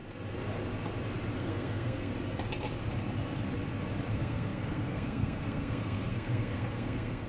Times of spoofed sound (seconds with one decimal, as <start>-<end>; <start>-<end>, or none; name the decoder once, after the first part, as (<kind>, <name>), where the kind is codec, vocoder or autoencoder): 1.4-2.1 (codec, SNAC); 4.1-7.3